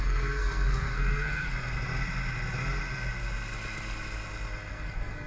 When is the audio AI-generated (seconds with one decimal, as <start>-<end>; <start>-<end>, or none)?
0.0-1.5; 4.7-5.3